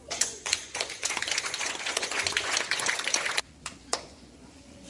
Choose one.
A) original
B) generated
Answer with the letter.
B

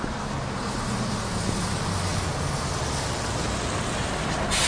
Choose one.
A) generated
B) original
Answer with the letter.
B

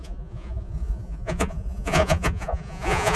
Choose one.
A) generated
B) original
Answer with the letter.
A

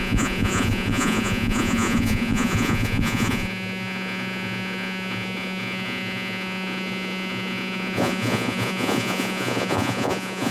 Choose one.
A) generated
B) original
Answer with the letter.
A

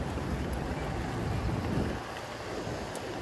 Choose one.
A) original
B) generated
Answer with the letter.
A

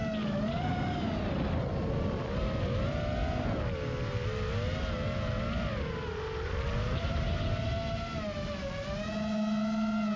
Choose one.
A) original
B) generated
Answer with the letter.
A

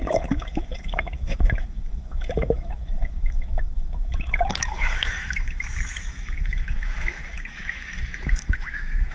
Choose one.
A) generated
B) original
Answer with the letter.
A